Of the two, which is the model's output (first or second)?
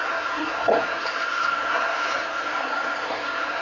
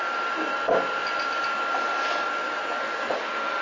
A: first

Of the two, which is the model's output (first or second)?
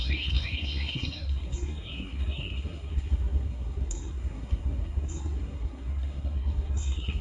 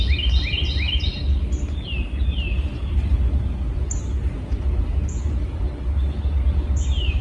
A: first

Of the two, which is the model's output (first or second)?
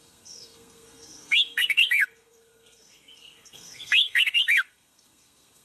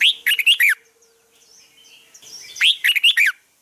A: first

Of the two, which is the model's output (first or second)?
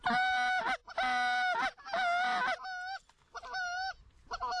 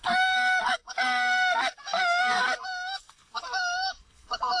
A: second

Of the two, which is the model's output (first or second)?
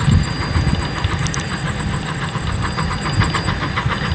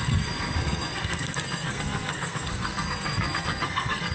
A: second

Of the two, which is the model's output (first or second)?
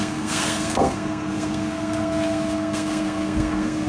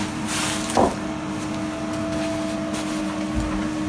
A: first